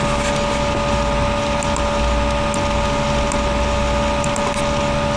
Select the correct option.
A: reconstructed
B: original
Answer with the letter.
B